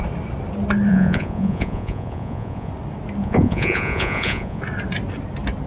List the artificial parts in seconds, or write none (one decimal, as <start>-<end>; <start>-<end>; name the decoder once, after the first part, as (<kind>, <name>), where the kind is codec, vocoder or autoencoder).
0.9-2.7 (vocoder, Vocos); 3.2-4.6